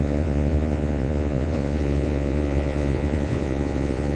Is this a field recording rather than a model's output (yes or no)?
no